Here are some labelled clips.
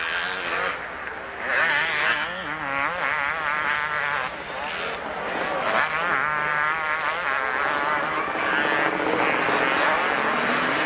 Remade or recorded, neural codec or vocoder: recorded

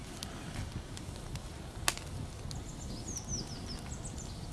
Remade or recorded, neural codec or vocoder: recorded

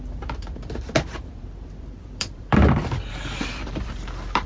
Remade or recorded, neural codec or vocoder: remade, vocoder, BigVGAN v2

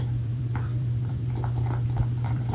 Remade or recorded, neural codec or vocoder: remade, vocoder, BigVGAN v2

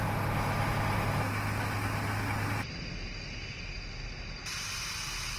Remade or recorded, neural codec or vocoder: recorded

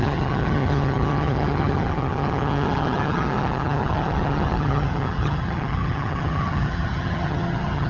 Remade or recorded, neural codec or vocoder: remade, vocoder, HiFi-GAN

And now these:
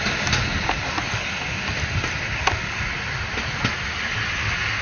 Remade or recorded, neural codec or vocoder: recorded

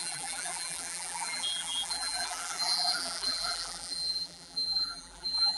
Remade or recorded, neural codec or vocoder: remade, vocoder, BigVGAN v2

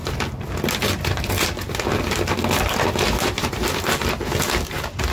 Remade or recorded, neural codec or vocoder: recorded